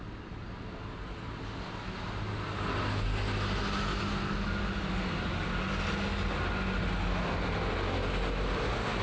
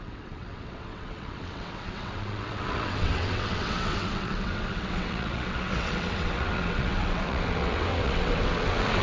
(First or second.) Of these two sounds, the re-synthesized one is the second